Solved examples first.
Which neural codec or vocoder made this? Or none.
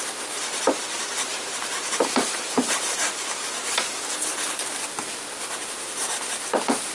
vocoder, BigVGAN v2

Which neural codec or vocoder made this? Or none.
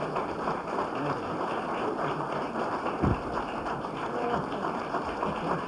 none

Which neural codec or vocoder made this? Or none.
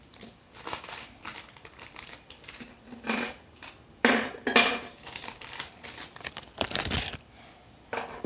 vocoder, BigVGAN v2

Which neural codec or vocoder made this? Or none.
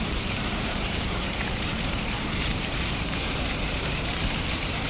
vocoder, BigVGAN v2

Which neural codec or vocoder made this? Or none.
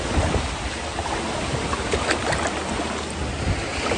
none